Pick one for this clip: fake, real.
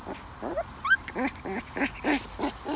real